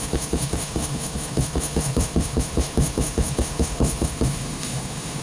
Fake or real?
fake